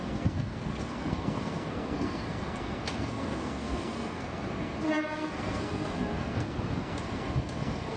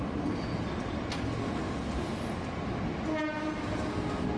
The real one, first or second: second